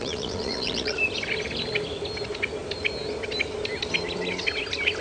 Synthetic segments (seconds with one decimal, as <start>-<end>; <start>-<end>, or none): 0.0-1.0